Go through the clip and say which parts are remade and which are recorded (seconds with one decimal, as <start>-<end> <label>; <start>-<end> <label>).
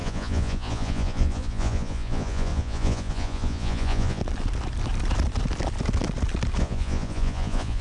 0.0-4.2 remade; 4.2-6.6 recorded; 6.6-7.8 remade